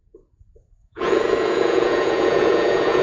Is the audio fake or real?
fake